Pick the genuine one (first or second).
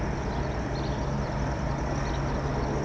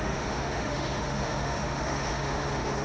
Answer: first